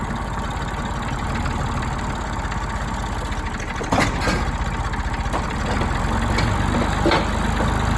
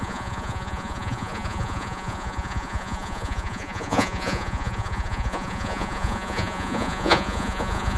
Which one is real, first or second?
first